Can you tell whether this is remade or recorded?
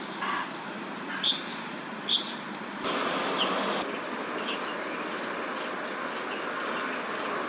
recorded